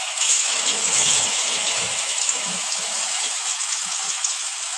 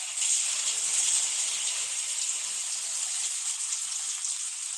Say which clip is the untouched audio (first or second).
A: second